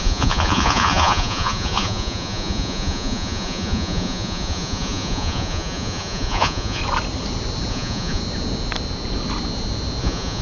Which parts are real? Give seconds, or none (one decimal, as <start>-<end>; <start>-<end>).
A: 6.8-7.7; 8.2-10.0